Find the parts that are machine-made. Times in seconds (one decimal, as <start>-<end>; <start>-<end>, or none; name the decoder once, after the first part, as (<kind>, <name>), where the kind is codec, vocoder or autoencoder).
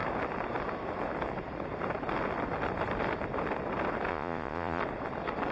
4.1-4.8 (vocoder, Vocos)